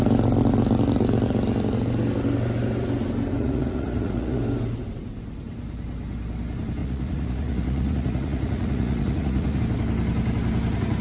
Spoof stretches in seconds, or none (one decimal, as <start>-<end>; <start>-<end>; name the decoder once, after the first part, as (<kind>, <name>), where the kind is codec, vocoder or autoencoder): 3.4-4.4 (vocoder, Vocos); 6.8-9.6